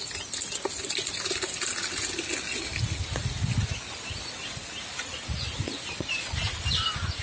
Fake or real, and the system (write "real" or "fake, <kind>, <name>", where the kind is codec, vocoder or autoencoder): real